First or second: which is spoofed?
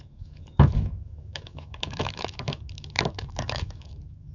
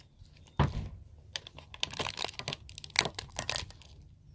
first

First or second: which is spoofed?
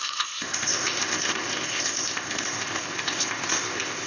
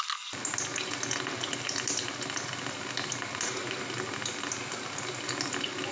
first